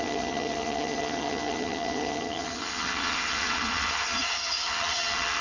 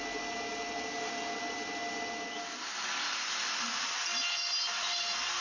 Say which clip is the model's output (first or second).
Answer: first